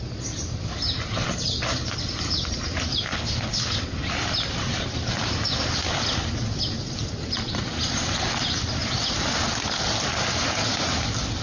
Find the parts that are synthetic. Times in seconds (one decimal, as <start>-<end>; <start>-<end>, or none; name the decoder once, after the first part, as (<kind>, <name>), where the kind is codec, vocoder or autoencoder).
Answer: 3.1-3.8 (codec, HILCodec)